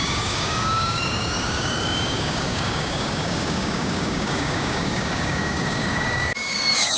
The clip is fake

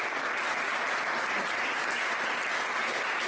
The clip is real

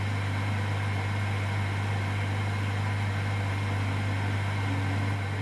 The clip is real